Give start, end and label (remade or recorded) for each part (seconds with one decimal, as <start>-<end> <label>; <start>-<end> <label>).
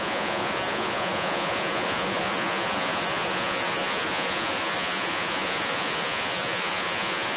0.0-7.4 remade